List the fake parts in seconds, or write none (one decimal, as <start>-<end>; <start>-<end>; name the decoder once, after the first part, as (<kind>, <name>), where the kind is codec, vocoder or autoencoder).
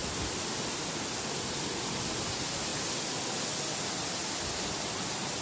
none